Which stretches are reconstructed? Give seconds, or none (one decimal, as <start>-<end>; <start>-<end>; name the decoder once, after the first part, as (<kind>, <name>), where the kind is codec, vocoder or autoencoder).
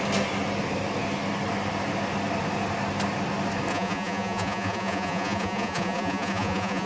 3.7-6.9 (vocoder, Vocos)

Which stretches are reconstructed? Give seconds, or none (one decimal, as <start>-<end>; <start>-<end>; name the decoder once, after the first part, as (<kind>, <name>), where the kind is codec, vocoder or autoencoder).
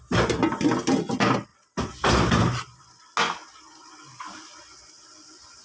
none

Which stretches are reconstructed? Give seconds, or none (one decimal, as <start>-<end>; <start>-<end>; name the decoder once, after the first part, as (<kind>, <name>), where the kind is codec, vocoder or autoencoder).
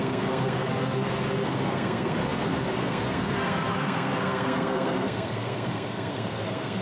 0.0-6.8 (codec, SNAC)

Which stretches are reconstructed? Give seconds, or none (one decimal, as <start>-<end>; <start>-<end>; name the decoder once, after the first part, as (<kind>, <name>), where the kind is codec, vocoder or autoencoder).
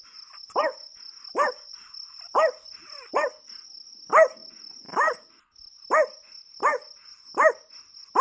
none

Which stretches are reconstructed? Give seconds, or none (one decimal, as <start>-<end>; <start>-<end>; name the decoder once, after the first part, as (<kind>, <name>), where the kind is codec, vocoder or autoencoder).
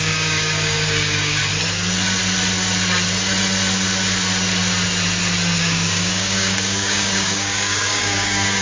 0.0-1.4 (codec, DAC); 5.6-8.6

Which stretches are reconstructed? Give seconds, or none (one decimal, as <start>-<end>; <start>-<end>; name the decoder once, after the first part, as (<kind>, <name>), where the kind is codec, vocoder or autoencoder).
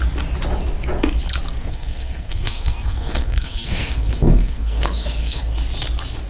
1.6-5.4 (codec, SNAC)